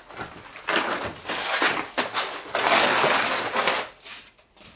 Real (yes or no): yes